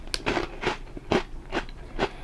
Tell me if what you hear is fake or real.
real